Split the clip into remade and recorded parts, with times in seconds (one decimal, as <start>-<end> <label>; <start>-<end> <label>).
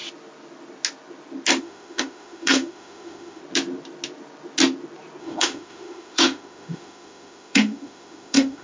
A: 0.0-1.6 recorded; 1.6-3.4 remade; 3.4-5.2 recorded; 5.2-8.6 remade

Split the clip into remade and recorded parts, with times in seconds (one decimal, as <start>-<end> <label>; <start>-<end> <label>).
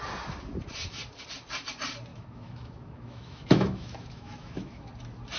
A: 0.0-2.1 recorded; 2.1-4.9 remade; 4.9-5.4 recorded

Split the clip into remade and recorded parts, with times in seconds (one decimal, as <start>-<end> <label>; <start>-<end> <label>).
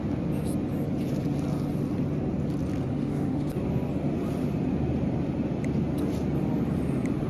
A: 0.0-2.9 recorded; 2.9-3.5 remade; 3.5-7.3 recorded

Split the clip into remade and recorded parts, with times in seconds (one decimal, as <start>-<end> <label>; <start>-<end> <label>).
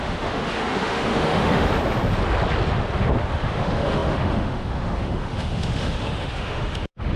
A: 0.0-1.7 remade; 1.7-3.3 recorded; 3.3-7.2 remade